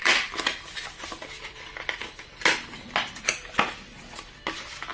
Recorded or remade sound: recorded